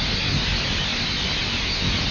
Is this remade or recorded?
recorded